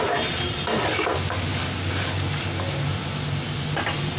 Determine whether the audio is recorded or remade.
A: recorded